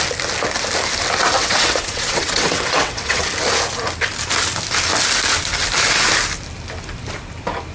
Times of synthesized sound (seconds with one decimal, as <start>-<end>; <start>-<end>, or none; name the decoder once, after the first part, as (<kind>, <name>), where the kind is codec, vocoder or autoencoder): 1.4-3.2 (vocoder, WaveNeXt)